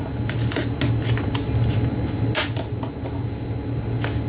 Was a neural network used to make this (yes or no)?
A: no